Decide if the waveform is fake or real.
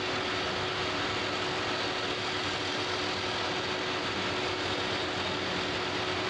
real